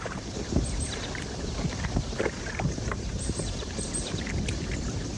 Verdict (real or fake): fake